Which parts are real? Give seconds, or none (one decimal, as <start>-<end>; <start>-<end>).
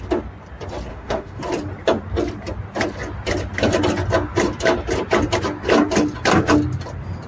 0.0-0.9; 1.4-7.3